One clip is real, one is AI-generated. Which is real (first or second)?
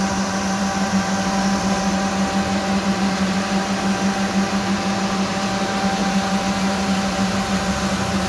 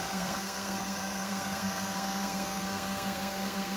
first